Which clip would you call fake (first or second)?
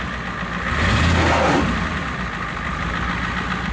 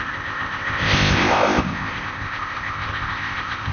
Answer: second